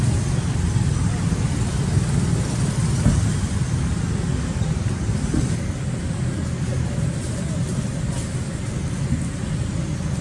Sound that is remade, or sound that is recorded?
recorded